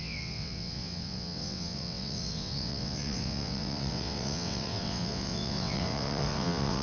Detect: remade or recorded remade